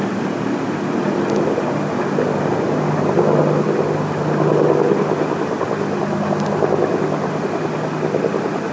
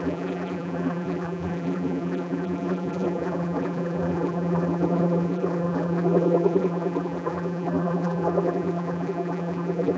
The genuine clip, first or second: first